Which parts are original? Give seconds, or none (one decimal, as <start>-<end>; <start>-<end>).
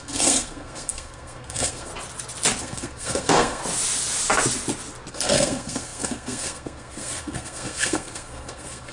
1.9-2.6; 3.6-5.1